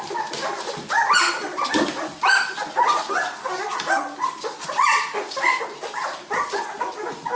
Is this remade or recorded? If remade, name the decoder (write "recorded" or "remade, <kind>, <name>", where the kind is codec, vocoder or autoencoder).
recorded